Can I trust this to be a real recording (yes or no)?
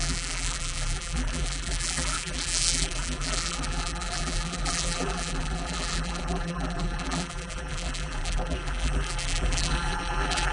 no